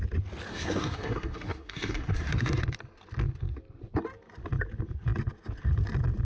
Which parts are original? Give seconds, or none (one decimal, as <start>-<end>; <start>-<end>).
0.0-0.5; 2.6-6.2